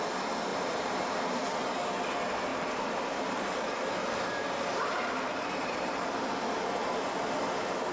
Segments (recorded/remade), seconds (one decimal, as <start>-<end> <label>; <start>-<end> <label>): 0.0-0.5 recorded; 0.5-1.6 remade; 1.6-2.5 recorded; 2.5-6.3 remade; 6.3-7.9 recorded